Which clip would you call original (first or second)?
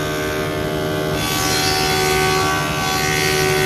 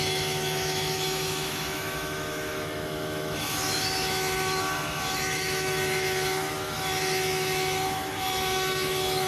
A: first